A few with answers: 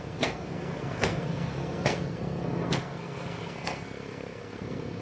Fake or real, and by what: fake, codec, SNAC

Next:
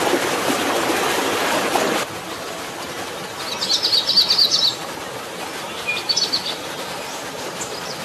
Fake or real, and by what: real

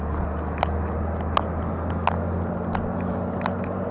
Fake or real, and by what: real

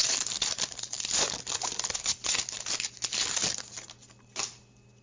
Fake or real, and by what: real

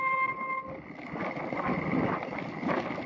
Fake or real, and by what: real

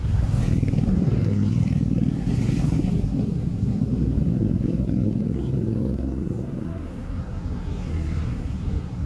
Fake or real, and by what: fake, codec, SNAC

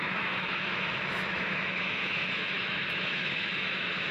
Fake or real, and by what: fake, autoencoder, DAC-VAE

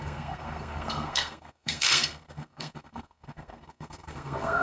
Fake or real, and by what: fake, codec, SNAC